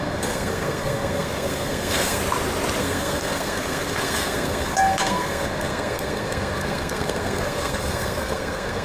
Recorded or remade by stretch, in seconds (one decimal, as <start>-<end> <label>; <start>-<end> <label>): 0.0-2.2 remade; 2.2-2.8 recorded; 2.8-8.8 remade